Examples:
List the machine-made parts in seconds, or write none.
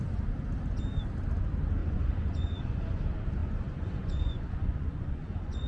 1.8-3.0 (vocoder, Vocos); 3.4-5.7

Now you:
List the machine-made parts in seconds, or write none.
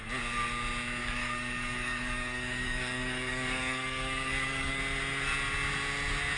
1.0-4.8 (codec, DAC)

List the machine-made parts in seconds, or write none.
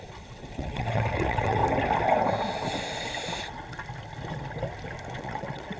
0.0-1.6 (vocoder, WaveNeXt); 5.1-5.8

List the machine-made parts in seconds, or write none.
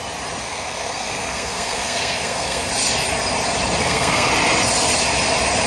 0.4-2.7 (codec, SNAC); 3.8-4.3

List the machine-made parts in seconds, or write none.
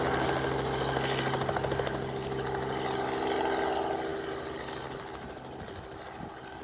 none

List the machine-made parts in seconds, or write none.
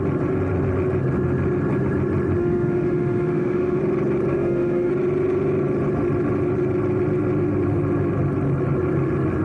2.4-3.8 (autoencoder, DAC-VAE); 4.3-4.9